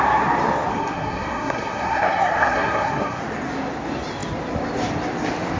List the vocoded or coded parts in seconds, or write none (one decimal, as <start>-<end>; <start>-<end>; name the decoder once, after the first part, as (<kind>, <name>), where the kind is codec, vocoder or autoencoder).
0.7-3.2 (codec, SNAC)